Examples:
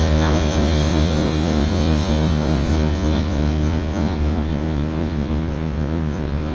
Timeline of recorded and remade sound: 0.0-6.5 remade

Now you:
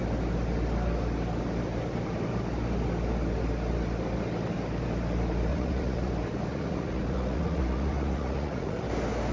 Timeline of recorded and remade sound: 0.0-5.5 recorded; 5.5-6.1 remade; 6.1-6.5 recorded; 6.5-8.8 remade; 8.8-9.3 recorded